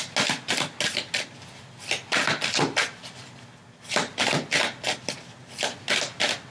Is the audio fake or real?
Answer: real